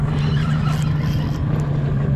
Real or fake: real